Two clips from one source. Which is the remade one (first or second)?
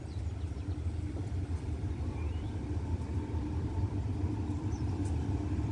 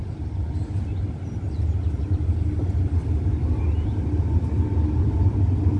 first